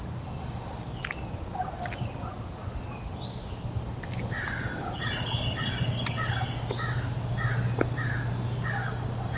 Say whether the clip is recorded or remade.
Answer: recorded